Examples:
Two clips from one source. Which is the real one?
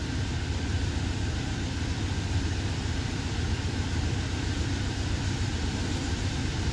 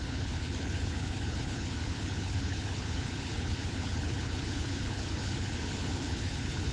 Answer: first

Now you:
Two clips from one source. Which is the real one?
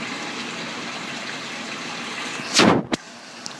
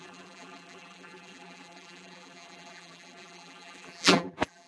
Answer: first